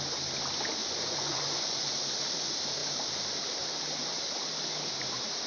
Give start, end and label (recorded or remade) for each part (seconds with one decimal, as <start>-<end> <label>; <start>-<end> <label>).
0.0-0.8 recorded; 0.8-1.9 remade; 1.9-5.5 recorded